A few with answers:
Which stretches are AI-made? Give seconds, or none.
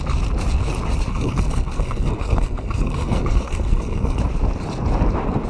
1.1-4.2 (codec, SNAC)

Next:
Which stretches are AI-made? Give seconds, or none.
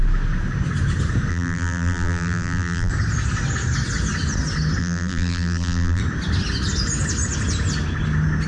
1.3-2.9 (vocoder, BigVGAN v2); 4.8-6.0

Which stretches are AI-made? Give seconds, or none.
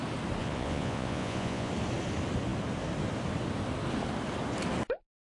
0.4-1.7 (vocoder, Vocos)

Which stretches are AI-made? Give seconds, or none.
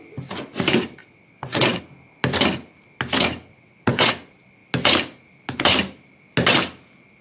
1.0-1.8 (vocoder, WaveNeXt); 3.5-4.1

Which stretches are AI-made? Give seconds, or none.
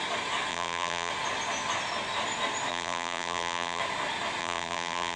0.5-1.1 (vocoder, BigVGAN v2); 2.7-3.8; 4.4-5.2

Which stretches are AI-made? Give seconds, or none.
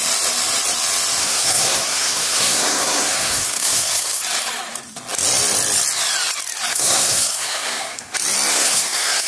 1.2-4.2 (codec, SNAC); 6.7-8.1; 8.5-9.3